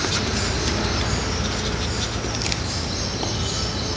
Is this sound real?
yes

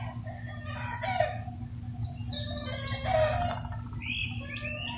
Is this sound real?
yes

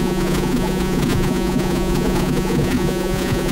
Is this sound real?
no